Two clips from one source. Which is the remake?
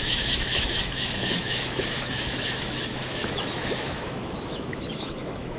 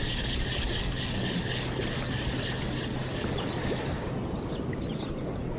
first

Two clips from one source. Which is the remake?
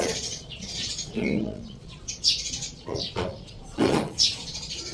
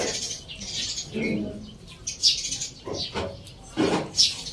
first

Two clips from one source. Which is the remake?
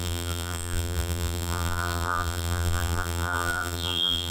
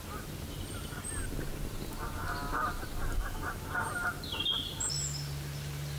first